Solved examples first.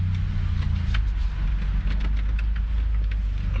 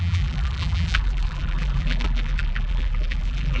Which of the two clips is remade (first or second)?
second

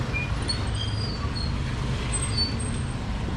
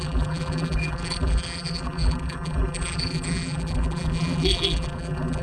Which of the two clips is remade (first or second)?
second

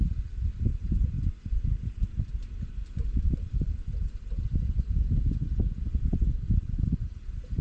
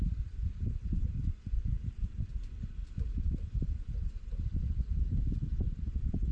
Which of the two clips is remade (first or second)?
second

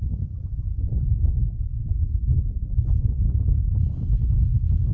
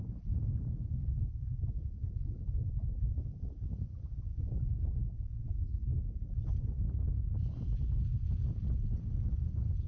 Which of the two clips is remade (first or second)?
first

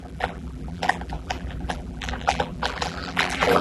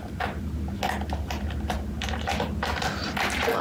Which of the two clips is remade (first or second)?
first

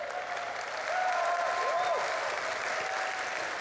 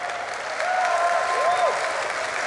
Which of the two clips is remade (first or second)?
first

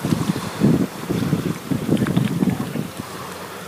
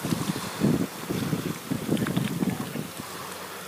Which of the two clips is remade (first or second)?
first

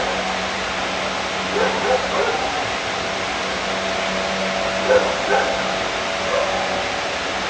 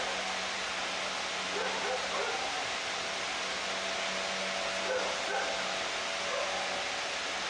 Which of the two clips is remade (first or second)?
first